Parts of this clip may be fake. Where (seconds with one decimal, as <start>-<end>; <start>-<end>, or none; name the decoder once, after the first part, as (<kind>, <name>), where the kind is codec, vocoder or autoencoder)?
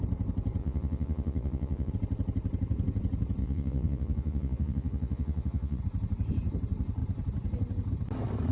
0.6-1.9 (vocoder, Vocos); 3.4-5.8